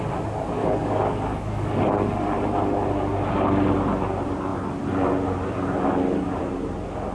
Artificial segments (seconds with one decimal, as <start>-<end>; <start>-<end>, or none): 0.6-1.8